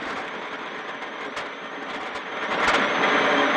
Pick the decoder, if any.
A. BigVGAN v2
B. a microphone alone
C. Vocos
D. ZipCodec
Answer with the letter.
B